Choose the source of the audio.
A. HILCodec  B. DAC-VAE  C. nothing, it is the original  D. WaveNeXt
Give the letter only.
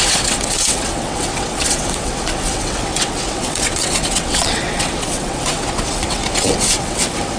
D